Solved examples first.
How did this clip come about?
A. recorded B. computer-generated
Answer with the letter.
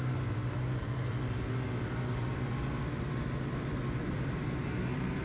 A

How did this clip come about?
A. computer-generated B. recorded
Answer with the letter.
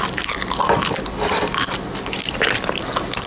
B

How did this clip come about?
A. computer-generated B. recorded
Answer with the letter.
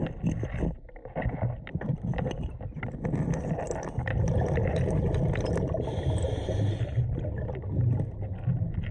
B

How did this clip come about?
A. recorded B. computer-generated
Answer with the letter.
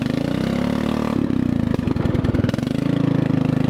A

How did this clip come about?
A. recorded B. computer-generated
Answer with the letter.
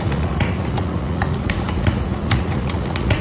B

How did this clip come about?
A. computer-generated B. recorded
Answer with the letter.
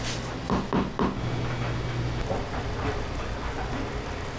B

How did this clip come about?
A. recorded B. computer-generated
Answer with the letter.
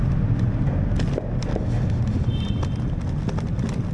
A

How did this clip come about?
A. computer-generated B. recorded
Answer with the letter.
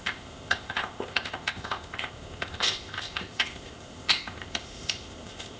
A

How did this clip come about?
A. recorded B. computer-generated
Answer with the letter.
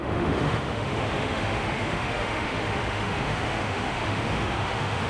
B